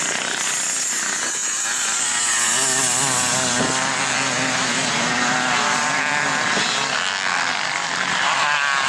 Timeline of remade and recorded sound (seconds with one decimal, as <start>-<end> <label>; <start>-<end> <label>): 0.0-8.9 recorded